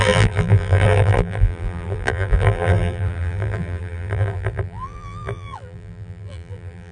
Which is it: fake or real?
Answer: fake